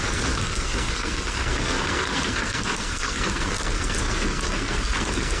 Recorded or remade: remade